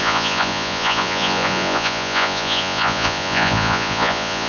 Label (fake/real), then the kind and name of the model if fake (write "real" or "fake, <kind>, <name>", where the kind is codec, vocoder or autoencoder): fake, vocoder, Vocos